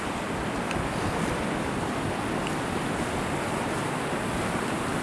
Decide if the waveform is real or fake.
real